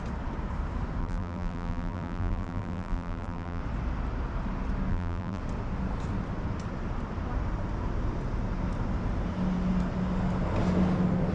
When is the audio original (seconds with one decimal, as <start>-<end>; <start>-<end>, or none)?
0.0-1.0; 3.6-4.9; 5.4-11.3